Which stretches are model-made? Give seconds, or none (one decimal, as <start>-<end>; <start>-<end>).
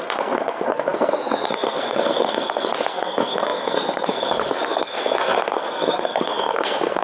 0.0-7.0